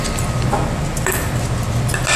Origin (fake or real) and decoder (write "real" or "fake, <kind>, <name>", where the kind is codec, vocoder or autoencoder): real